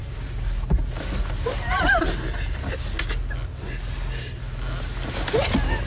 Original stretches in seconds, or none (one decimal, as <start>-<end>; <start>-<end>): 0.0-5.9